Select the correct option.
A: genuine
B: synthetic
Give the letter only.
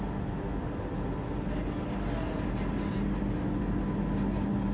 A